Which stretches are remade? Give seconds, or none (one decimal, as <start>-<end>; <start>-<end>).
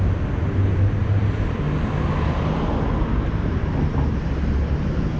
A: none